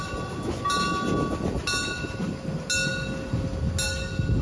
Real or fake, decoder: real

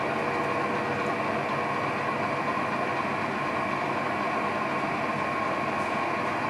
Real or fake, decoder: real